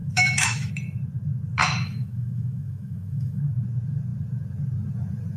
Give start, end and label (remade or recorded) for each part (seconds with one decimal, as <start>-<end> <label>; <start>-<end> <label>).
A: 0.0-0.7 remade; 0.7-1.6 recorded; 1.6-3.4 remade; 3.4-5.4 recorded